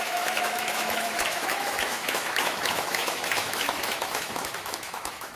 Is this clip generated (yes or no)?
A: yes